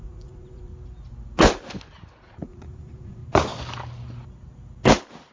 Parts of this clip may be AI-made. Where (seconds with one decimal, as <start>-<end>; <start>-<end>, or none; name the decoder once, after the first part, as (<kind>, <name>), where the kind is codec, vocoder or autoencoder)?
0.0-0.7 (vocoder, Vocos); 2.2-3.2